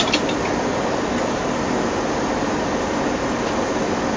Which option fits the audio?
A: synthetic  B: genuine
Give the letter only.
B